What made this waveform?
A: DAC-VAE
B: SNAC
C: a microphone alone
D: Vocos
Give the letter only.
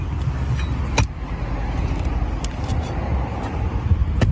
C